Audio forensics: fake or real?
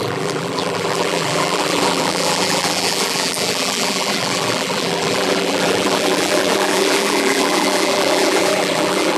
fake